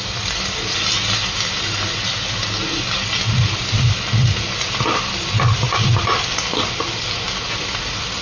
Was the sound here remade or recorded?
recorded